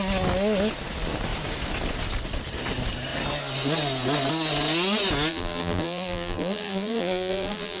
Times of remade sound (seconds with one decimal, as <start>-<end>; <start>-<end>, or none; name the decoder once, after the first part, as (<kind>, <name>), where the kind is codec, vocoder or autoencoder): 5.3-7.8 (vocoder, BigVGAN v2)